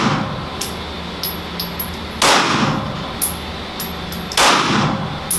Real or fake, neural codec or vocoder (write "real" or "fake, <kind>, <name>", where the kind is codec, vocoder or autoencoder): real